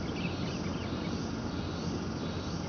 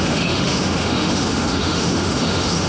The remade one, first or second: second